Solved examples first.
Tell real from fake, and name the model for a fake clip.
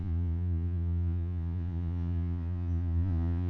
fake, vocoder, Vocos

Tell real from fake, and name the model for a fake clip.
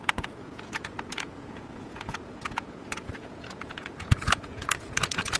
fake, vocoder, Vocos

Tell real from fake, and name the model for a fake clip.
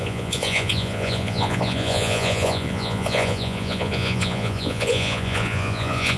fake, vocoder, Vocos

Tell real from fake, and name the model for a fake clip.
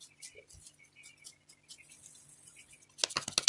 real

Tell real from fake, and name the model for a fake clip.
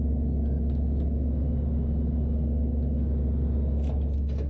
real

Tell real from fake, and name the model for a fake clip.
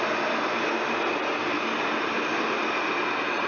real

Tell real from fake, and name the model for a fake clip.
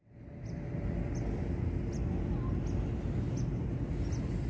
real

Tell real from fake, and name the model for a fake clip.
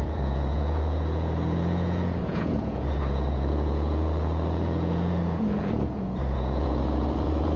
fake, vocoder, Vocos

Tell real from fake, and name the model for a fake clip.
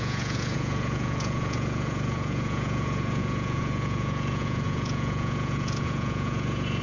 fake, vocoder, Vocos